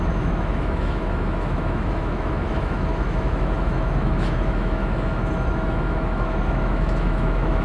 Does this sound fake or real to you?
fake